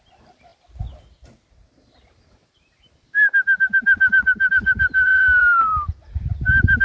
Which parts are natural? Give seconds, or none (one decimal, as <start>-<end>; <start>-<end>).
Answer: 0.5-4.5